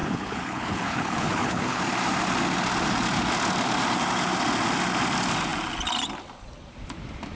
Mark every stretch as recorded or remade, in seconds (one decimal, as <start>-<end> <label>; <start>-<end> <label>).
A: 0.0-1.8 remade; 1.8-7.3 recorded